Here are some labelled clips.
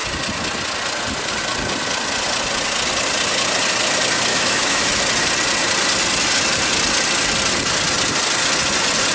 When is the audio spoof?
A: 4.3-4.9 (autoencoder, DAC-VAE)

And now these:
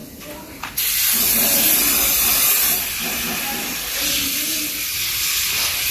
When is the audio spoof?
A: none

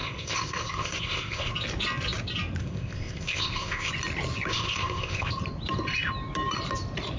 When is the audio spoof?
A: 0.0-1.5 (codec, ZipCodec); 2.6-3.9; 4.5-5.3